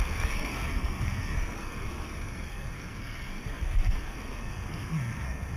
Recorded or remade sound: remade